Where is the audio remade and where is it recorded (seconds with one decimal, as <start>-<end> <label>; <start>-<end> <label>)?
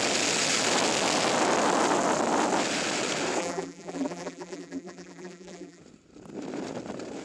0.0-3.4 recorded; 3.4-5.8 remade; 5.8-7.2 recorded